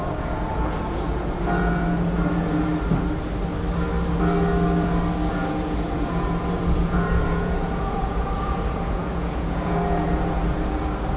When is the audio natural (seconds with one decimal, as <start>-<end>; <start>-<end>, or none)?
2.7-5.3